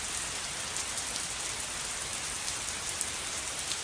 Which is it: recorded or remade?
recorded